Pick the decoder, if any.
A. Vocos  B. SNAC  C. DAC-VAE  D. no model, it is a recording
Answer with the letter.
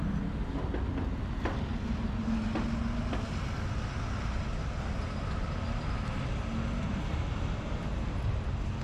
D